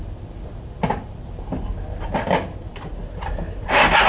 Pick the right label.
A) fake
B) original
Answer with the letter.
B